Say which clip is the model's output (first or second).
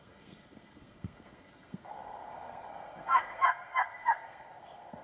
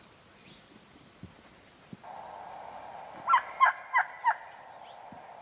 first